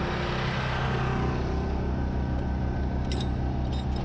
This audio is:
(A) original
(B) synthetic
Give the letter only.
A